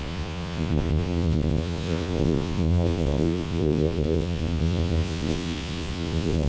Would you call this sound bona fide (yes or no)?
no